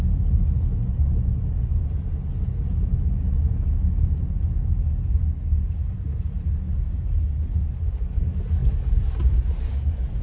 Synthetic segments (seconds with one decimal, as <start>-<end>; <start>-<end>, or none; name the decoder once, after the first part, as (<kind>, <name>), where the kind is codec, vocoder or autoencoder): none